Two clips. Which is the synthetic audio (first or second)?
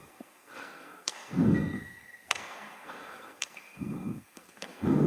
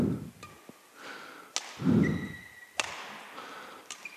first